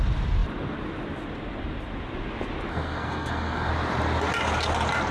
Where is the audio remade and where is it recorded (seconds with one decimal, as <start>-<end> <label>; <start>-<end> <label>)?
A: 0.0-2.7 recorded; 2.7-3.7 remade; 3.7-5.1 recorded